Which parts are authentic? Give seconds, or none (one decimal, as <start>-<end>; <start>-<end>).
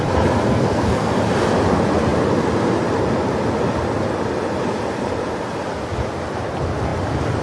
0.0-0.5; 1.1-7.4